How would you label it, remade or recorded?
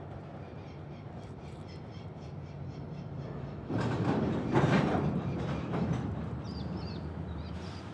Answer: remade